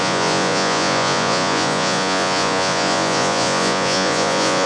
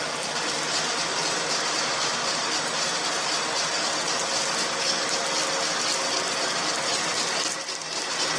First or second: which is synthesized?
first